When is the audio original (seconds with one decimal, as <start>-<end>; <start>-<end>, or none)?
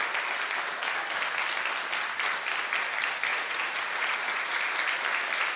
0.0-3.3; 4.6-5.6